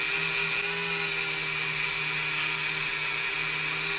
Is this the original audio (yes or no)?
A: yes